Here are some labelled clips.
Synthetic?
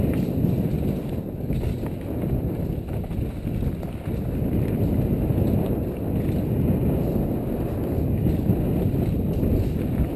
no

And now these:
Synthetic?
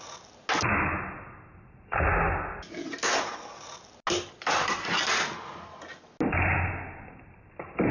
no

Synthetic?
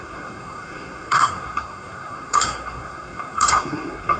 yes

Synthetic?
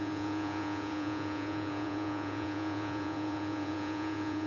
yes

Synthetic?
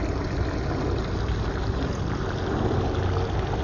no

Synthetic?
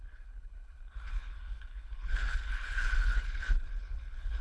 yes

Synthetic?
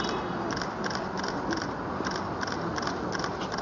no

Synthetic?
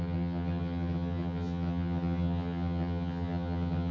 yes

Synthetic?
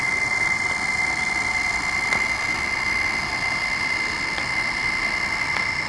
no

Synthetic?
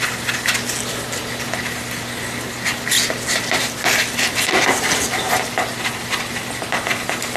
no